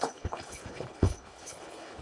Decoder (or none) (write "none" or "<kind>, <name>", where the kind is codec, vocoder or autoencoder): codec, HILCodec